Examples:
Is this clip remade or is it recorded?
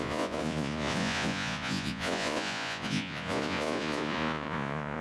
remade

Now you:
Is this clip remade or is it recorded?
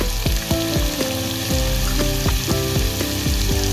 recorded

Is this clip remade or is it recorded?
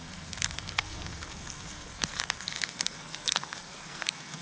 remade